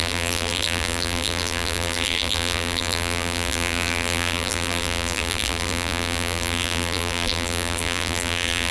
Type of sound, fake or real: fake